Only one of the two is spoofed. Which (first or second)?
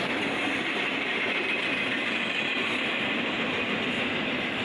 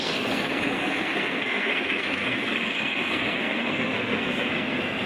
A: second